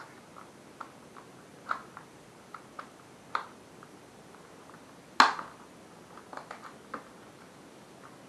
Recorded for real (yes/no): yes